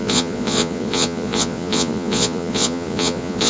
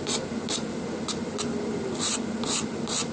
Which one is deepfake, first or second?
first